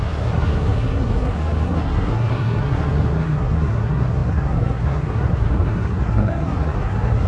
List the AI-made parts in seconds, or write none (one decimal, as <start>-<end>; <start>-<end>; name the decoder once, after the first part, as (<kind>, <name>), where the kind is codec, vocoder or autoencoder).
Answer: 0.0-7.3 (codec, SNAC)